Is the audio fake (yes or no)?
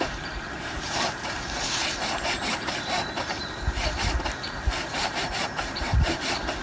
yes